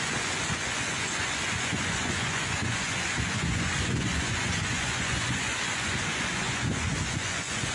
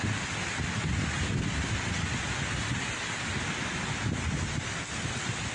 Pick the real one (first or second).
second